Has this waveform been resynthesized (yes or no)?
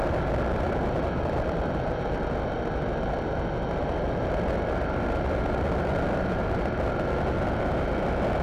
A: no